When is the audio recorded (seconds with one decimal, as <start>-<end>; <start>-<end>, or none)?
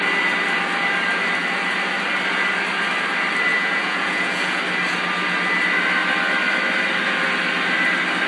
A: 0.0-3.5; 4.6-8.3